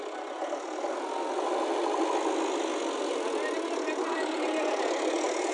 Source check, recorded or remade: recorded